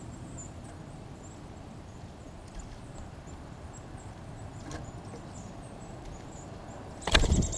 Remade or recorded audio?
remade